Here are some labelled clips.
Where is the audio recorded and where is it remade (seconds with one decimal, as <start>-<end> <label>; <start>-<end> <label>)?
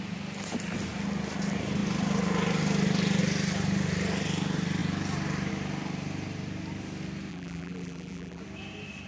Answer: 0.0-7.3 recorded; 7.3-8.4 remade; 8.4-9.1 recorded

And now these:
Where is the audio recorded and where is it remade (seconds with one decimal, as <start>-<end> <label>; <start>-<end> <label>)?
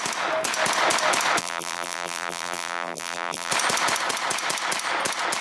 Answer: 0.0-1.4 recorded; 1.4-3.5 remade; 3.5-5.4 recorded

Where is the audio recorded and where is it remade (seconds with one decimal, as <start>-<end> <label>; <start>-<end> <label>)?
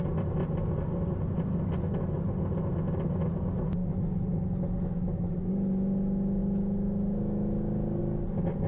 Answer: 0.0-8.7 recorded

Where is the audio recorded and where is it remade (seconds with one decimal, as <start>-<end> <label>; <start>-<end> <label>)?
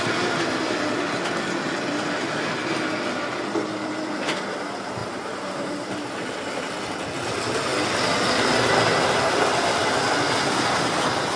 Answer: 0.0-5.0 recorded; 5.0-6.8 remade; 6.8-11.4 recorded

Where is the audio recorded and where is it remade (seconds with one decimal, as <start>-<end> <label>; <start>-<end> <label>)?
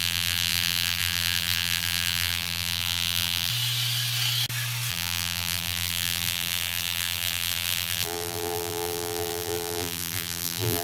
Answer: 0.0-3.5 remade; 3.5-4.9 recorded; 4.9-10.8 remade